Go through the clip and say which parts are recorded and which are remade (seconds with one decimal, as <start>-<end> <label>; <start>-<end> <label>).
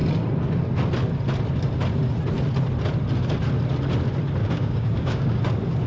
0.0-4.4 recorded; 4.4-5.4 remade; 5.4-5.9 recorded